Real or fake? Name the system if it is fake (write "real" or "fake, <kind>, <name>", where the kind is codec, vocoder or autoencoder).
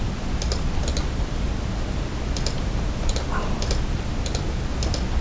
real